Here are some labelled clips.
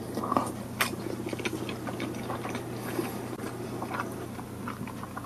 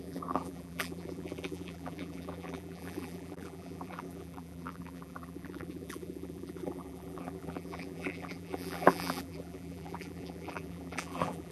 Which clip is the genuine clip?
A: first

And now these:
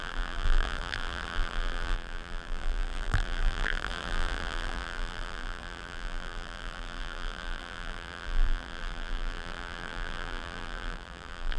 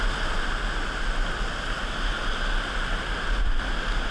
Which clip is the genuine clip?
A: second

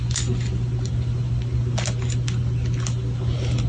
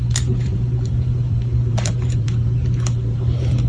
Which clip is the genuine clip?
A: first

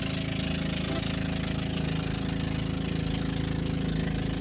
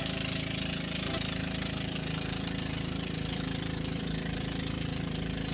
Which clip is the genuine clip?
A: first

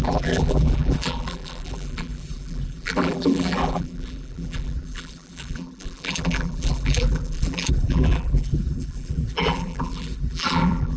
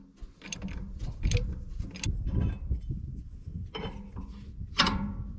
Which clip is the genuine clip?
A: second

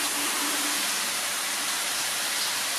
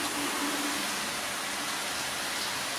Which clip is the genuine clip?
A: second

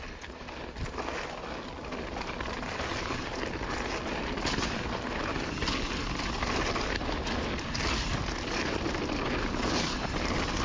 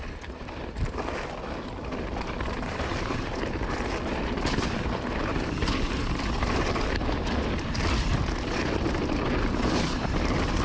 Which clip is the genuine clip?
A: first